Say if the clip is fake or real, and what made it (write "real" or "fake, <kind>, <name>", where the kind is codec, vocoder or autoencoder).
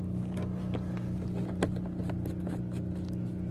real